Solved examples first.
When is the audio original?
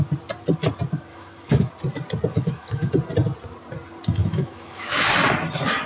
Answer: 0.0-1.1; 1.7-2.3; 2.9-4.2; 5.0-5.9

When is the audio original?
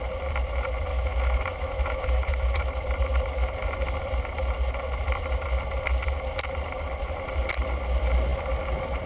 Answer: 0.0-0.9; 2.7-9.1